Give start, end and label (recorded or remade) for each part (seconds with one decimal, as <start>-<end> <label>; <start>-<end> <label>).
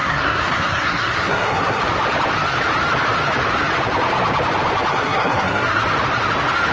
0.0-1.8 remade; 1.8-4.9 recorded; 4.9-5.8 remade; 5.8-6.7 recorded